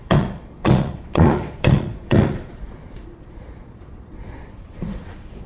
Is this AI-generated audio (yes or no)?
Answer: yes